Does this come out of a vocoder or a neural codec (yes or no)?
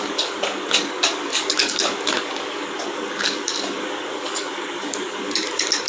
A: yes